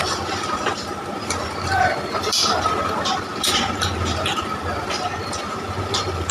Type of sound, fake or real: fake